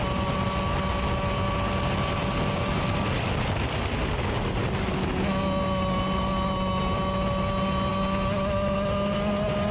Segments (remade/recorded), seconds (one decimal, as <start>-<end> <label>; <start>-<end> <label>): 0.0-9.7 recorded

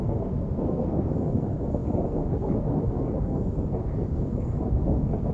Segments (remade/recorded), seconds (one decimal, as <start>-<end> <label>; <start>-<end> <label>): 0.0-5.3 remade